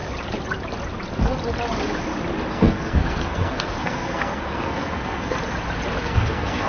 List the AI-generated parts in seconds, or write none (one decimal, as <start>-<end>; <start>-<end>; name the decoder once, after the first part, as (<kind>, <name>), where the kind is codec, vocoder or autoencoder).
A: 2.5-5.4 (codec, SNAC); 6.0-6.7